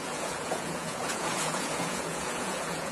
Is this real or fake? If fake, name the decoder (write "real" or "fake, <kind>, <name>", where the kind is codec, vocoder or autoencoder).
fake, vocoder, Vocos